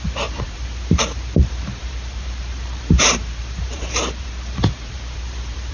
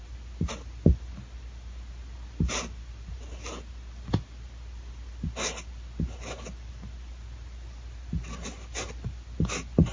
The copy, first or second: first